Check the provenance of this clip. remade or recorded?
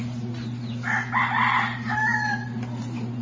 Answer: recorded